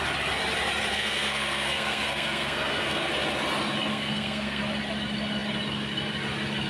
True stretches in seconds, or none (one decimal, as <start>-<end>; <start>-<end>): 0.0-0.9; 3.1-3.9; 4.6-6.7